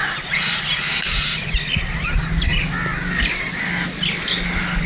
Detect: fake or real real